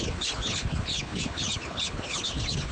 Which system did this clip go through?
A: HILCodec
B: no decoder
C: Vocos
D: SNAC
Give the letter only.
A